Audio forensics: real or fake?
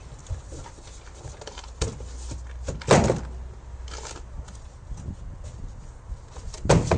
real